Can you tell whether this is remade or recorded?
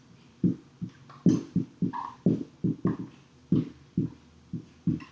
recorded